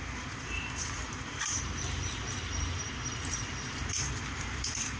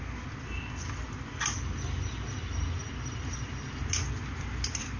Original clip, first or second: second